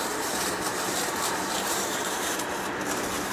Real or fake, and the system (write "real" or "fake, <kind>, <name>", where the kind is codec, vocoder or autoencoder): fake, vocoder, BigVGAN v2